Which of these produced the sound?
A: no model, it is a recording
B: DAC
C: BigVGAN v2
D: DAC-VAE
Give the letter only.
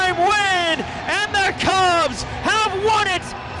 C